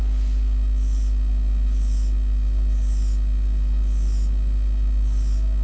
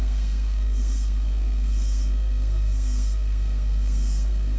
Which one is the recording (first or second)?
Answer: first